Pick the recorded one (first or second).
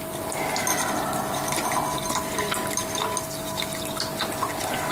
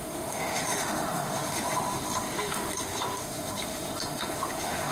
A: first